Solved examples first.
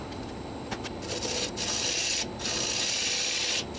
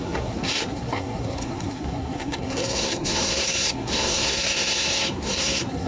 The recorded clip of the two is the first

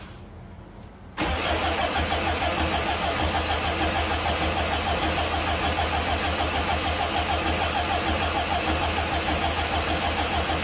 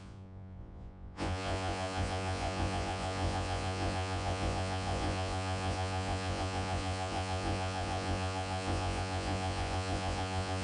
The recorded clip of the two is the first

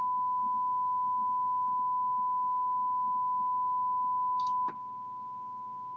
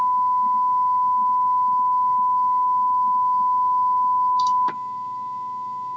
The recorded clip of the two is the first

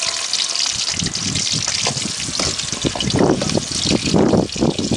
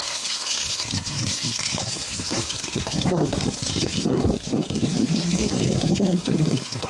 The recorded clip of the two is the first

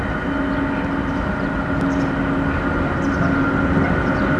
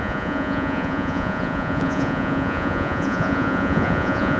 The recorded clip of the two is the first